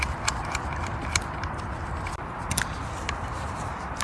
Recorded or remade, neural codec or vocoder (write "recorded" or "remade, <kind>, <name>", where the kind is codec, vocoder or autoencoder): recorded